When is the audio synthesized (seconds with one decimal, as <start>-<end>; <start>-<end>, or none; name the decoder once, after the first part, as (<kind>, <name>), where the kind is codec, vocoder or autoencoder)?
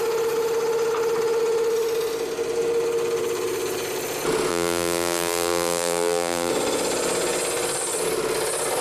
4.5-6.5 (vocoder, BigVGAN v2)